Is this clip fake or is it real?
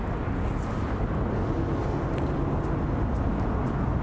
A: real